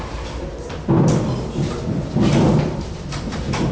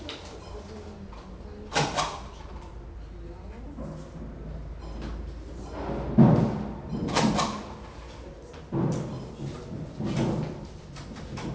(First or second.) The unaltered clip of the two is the second